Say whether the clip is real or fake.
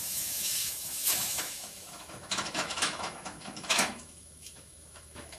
fake